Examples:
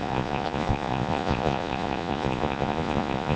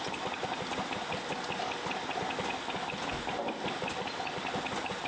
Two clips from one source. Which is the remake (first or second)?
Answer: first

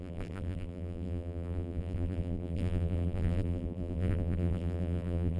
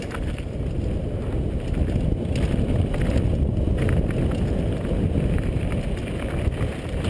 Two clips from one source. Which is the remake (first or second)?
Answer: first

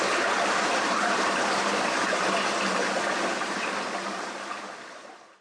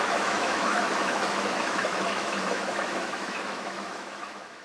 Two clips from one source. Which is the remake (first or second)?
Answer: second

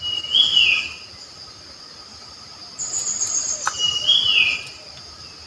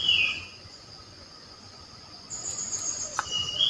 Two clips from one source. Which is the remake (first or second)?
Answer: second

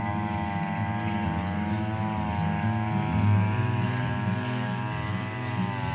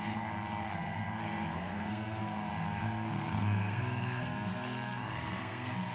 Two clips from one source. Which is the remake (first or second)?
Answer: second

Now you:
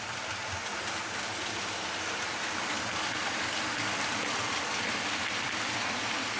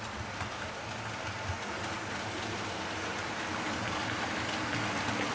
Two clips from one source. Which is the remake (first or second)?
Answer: first